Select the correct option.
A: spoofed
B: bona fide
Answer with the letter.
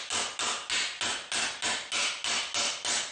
B